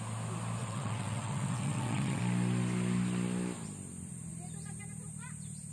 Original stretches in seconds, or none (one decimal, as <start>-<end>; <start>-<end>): 0.0-0.6; 2.2-5.7